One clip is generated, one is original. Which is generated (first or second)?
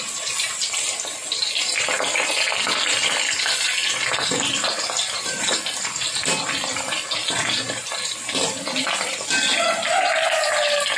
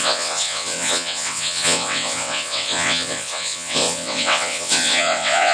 second